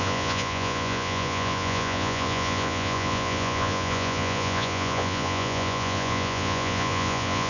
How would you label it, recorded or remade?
remade